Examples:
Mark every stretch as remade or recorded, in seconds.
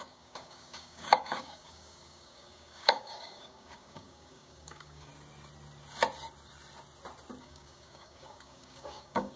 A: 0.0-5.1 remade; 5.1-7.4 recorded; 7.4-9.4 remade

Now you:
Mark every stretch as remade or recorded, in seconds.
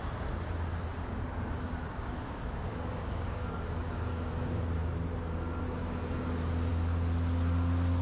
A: 0.0-0.9 recorded; 0.9-4.3 remade; 4.3-8.0 recorded